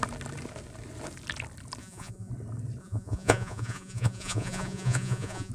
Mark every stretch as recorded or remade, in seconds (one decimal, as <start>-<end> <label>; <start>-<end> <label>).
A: 0.0-1.8 recorded; 1.8-2.3 remade; 2.3-2.8 recorded; 2.8-5.5 remade